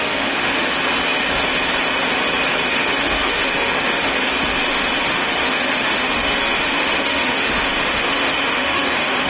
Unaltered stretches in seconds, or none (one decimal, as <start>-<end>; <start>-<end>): 0.7-2.7; 4.1-4.7